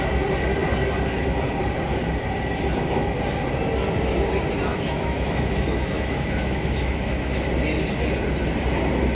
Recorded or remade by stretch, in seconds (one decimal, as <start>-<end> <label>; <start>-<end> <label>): 0.0-4.7 recorded; 4.7-7.4 remade; 7.4-9.1 recorded